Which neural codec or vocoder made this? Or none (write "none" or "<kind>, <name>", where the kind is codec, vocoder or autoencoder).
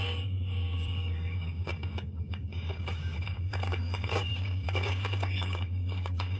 codec, DAC